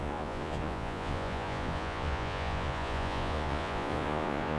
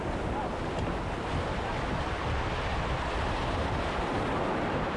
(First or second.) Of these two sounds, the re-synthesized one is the first